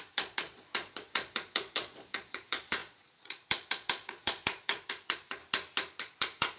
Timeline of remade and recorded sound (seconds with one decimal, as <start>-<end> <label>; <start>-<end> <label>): 0.0-5.4 remade; 5.4-6.0 recorded; 6.0-6.6 remade